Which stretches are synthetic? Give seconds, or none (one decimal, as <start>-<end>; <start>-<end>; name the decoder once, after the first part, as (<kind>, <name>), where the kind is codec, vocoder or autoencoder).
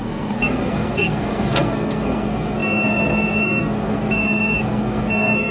0.0-5.5 (codec, SNAC)